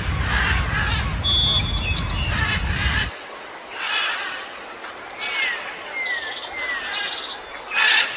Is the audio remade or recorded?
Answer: recorded